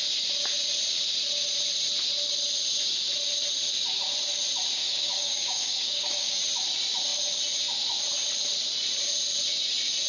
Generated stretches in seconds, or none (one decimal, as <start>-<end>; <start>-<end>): 4.8-6.4